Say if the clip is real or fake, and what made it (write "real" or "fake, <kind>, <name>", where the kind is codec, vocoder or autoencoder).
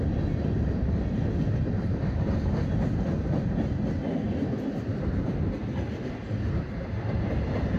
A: real